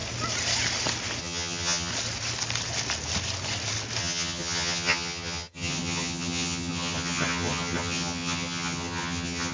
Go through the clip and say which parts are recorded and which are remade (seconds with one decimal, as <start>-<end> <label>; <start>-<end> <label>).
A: 0.0-1.2 recorded; 1.2-1.9 remade; 1.9-4.0 recorded; 4.0-9.5 remade